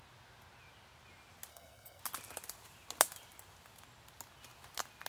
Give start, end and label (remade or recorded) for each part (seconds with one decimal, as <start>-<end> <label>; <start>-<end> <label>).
0.0-1.5 recorded; 1.5-2.0 remade; 2.0-5.1 recorded